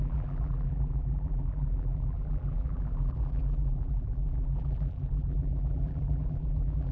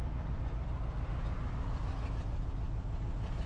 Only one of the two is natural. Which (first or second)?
second